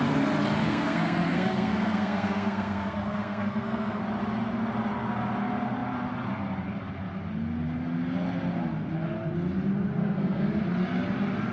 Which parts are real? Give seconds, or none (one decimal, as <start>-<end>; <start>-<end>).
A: 0.0-0.6; 4.0-10.0; 10.5-11.5